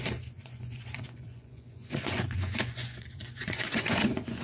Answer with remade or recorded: remade